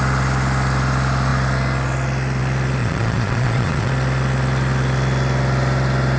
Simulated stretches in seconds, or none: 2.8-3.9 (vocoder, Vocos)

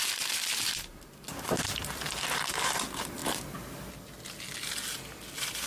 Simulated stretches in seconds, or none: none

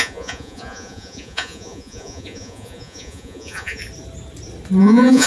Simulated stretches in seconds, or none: 0.0-3.8 (vocoder, Vocos); 4.8-5.3

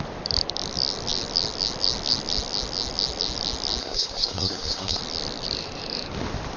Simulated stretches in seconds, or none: 3.8-5.0 (codec, SNAC)